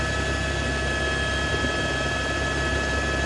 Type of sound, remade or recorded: recorded